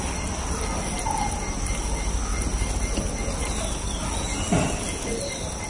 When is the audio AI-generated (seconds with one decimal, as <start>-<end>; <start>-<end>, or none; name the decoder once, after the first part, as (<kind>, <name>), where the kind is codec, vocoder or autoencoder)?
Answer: none